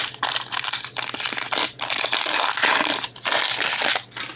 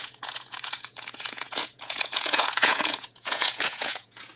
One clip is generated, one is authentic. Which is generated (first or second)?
second